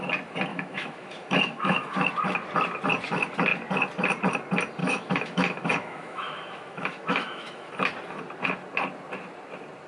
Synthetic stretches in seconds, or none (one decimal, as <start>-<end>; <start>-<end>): 0.5-2.1; 4.8-7.7